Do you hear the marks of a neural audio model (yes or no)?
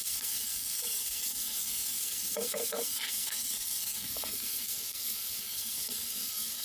yes